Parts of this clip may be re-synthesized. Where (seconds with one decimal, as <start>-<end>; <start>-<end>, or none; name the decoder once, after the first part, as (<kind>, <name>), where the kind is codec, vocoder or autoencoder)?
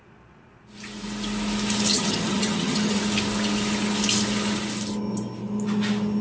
1.9-3.0 (vocoder, HiFi-GAN)